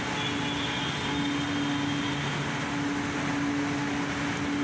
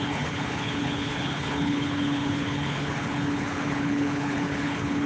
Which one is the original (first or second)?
first